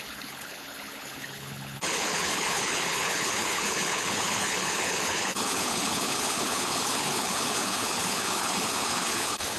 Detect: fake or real fake